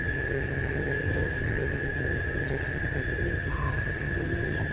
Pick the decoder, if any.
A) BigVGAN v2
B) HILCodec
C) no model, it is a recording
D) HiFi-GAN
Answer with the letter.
D